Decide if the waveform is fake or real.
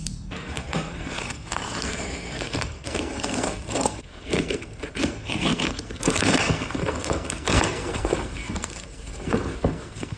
fake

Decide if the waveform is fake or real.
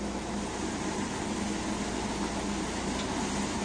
real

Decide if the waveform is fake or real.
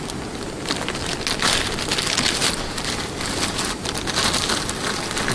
real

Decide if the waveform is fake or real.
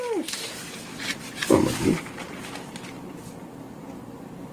real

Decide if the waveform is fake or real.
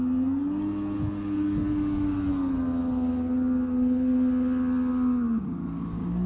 real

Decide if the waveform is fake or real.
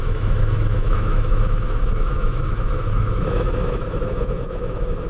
fake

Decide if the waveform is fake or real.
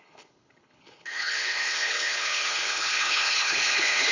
fake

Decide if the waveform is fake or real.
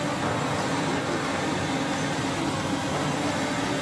real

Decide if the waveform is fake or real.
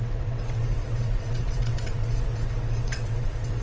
fake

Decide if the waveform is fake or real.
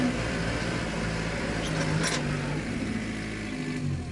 real